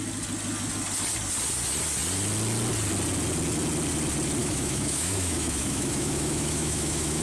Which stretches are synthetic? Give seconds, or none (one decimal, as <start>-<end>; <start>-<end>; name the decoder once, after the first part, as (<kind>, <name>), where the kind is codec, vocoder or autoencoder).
4.4-7.2 (autoencoder, DAC-VAE)